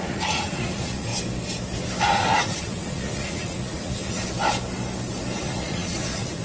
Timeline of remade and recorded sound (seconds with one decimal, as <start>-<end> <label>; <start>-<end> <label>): 0.0-1.1 remade; 1.1-2.0 recorded; 2.0-4.2 remade; 4.2-5.4 recorded; 5.4-6.4 remade